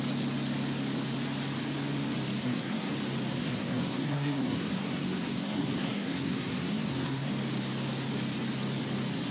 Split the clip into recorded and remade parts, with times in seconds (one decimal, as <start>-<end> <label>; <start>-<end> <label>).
0.0-2.4 recorded; 2.4-2.9 remade; 2.9-3.3 recorded; 3.3-7.3 remade; 7.3-9.3 recorded